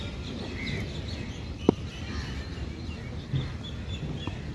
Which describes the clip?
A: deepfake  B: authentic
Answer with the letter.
B